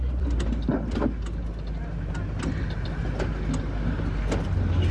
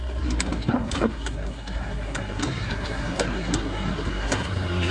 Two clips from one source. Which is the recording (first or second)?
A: first